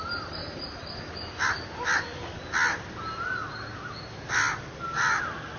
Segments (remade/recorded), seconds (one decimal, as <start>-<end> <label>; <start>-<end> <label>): 0.0-0.4 recorded; 0.4-0.9 remade; 0.9-5.6 recorded